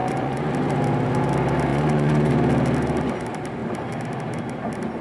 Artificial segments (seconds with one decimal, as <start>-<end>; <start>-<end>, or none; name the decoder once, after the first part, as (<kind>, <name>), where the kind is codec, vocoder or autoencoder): 0.0-0.5 (vocoder, Vocos); 1.7-2.3